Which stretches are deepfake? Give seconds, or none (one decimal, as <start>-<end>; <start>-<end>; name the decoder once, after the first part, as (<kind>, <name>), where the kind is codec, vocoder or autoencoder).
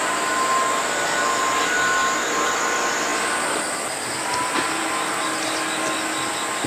none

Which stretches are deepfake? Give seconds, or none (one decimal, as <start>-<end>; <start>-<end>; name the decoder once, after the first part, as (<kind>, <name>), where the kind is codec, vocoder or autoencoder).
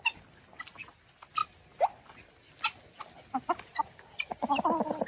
none